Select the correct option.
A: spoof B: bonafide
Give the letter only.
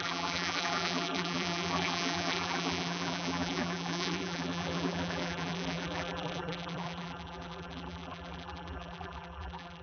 A